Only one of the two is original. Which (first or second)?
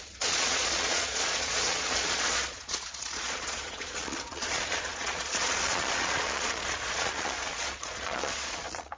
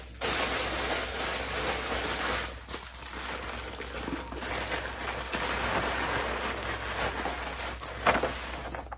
second